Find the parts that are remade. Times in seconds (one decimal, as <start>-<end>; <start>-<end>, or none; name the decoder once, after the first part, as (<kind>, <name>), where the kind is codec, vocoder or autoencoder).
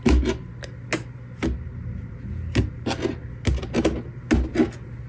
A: none